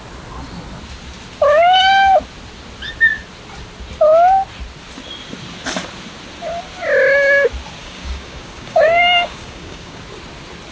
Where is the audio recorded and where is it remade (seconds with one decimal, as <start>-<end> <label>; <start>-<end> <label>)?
0.0-7.8 recorded; 7.8-10.0 remade; 10.0-10.7 recorded